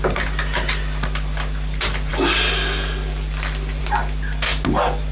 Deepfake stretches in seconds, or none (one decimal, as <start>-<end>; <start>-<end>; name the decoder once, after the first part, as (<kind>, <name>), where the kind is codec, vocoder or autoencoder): none